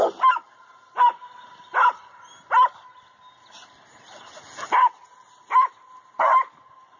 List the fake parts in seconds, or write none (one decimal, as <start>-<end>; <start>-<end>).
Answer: none